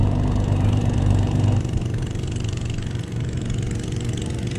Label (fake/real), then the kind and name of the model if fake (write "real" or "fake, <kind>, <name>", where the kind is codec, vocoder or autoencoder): fake, vocoder, BigVGAN v2